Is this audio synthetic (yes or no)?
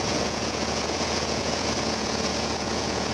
yes